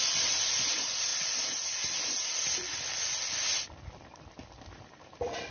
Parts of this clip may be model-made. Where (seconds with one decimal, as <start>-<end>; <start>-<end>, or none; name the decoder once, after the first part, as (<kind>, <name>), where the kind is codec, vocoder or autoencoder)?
none